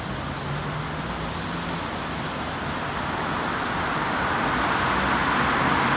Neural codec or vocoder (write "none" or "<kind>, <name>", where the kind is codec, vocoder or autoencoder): none